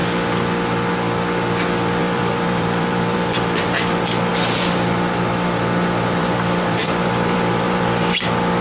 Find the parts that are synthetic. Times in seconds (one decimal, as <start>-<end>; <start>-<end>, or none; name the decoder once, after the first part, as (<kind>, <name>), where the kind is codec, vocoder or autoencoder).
2.0-4.3 (vocoder, BigVGAN v2); 6.2-8.6